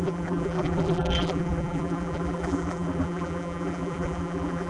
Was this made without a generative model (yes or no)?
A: no